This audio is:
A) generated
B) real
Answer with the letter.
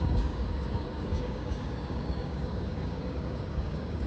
A